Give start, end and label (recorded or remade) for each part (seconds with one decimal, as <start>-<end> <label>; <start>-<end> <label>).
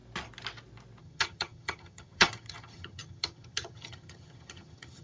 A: 0.0-1.0 recorded; 1.0-5.0 remade